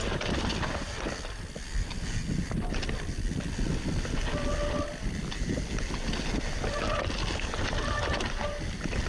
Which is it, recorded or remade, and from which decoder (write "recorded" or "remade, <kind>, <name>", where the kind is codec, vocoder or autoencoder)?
recorded